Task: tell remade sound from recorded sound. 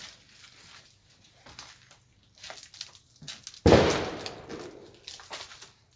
recorded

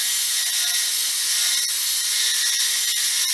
remade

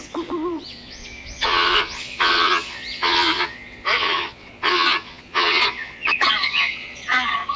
remade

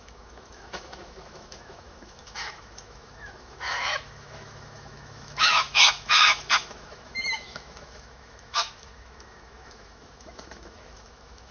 remade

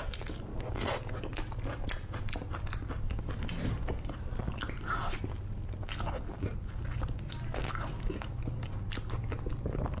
recorded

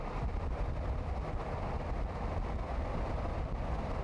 recorded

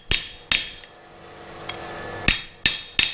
recorded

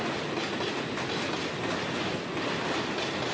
recorded